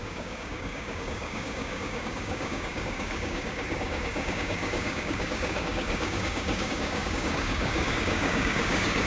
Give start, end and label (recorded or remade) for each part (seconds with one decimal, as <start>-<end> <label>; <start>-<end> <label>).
0.0-9.1 remade